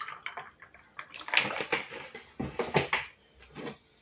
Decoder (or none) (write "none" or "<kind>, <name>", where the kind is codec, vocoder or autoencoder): none